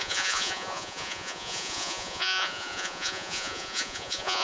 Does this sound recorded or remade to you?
remade